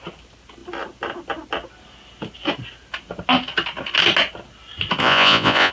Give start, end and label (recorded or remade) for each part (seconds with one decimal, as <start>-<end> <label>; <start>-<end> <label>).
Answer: 0.0-5.0 recorded; 5.0-5.7 remade